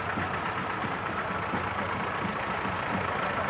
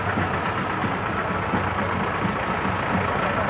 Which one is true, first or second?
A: second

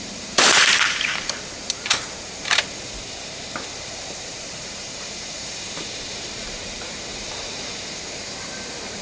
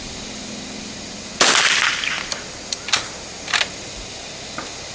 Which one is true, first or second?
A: second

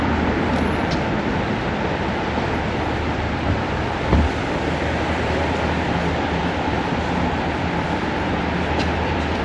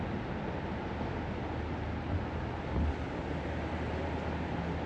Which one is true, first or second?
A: second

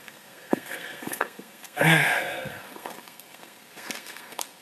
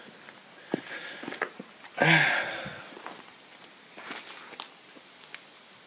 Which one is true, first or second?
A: second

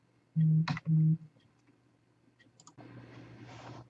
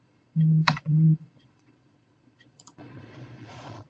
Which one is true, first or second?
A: first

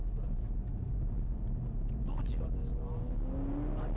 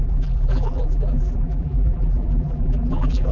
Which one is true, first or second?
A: first